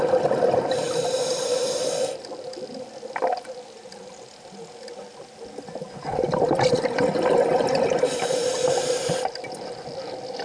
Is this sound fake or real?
real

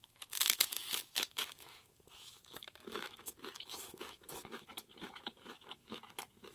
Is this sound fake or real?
fake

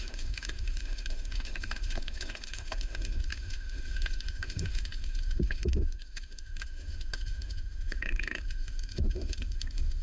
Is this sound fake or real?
fake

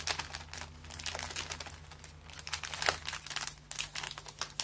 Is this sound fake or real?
real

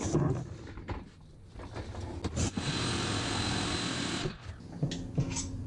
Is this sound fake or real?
real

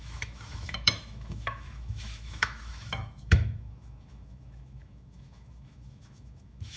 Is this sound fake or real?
fake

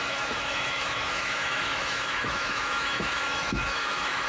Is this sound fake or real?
fake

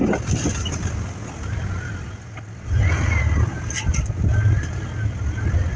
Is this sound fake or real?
real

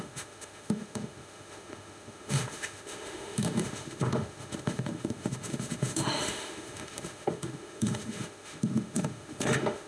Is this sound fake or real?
fake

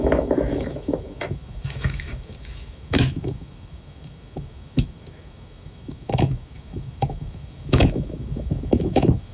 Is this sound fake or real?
fake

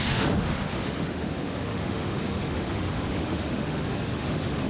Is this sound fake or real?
fake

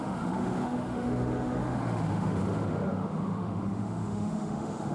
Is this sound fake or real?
fake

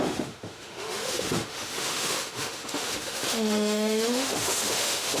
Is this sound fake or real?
fake